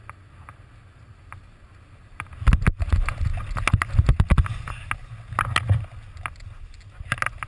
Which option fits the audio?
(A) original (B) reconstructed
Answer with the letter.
A